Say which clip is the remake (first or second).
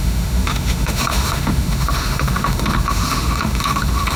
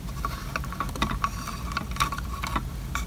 first